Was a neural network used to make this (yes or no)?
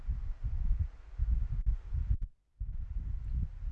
no